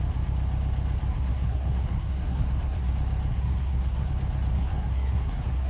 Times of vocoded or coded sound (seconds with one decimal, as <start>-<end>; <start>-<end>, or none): 1.1-2.9; 3.3-4.1; 4.5-5.7